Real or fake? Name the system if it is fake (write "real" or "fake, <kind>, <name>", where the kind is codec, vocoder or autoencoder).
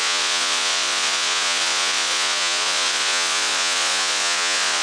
fake, vocoder, Vocos